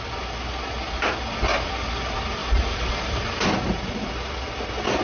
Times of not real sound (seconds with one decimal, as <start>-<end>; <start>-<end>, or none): 2.4-3.9